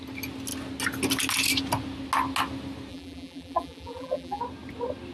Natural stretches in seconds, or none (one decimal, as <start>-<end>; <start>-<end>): 0.0-2.9; 4.4-5.1